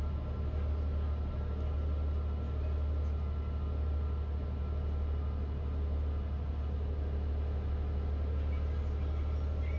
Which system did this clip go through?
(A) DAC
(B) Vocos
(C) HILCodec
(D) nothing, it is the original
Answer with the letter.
D